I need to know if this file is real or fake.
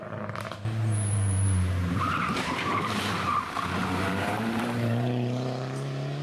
fake